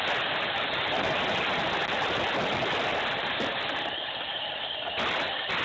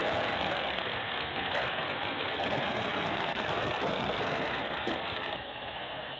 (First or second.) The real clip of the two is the first